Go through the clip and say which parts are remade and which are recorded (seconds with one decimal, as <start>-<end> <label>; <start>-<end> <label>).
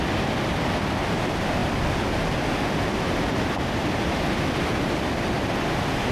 0.0-6.1 recorded